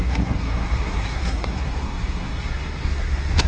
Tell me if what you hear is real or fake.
fake